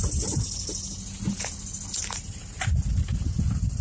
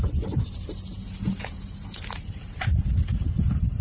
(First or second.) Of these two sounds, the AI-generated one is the second